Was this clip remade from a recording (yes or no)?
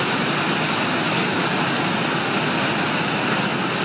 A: no